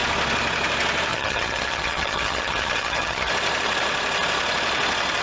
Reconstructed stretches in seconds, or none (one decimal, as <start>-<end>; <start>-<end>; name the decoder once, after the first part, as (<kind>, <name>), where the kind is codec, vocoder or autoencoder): 1.1-3.3 (vocoder, HiFi-GAN)